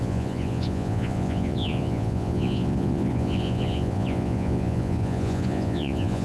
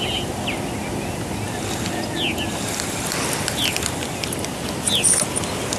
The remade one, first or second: first